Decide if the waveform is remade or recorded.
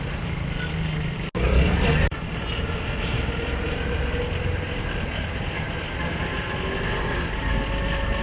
recorded